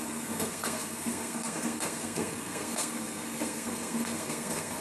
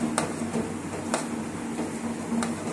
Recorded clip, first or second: second